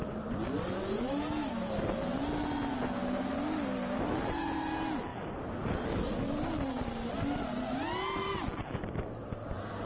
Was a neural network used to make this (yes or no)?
no